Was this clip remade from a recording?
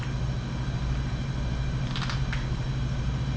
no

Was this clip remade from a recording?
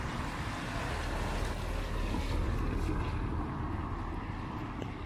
no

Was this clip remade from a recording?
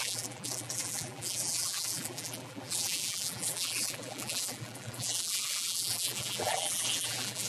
yes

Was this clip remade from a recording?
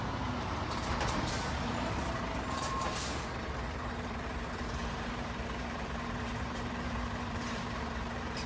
yes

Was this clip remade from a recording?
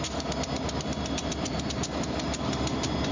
yes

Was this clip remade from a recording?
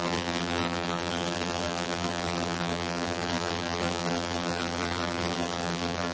yes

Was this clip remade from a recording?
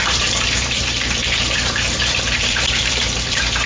yes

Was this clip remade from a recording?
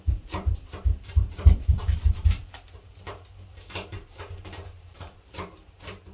yes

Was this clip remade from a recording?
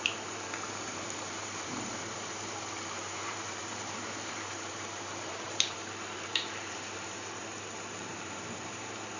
yes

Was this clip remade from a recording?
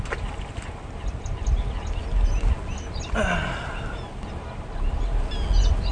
no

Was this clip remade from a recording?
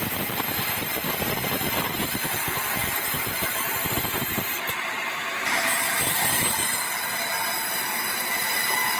yes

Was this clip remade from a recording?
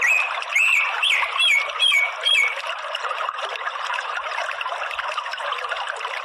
yes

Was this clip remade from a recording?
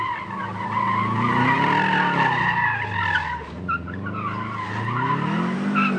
no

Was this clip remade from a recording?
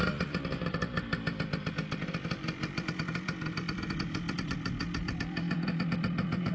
yes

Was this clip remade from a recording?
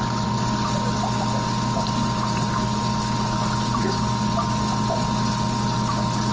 no